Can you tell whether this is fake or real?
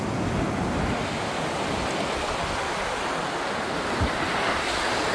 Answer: real